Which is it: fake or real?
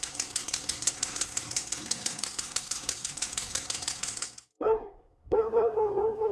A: fake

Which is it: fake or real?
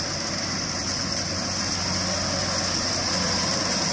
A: real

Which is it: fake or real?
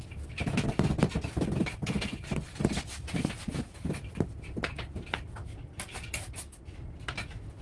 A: real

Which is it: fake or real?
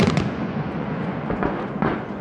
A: fake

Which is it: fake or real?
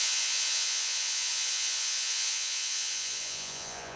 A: fake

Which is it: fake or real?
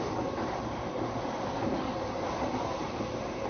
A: real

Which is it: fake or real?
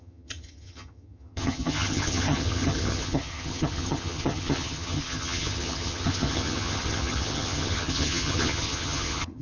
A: fake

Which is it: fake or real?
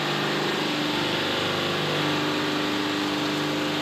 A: real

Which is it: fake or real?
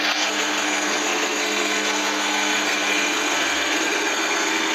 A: fake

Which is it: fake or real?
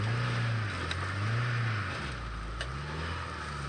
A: real